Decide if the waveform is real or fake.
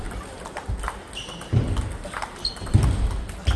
real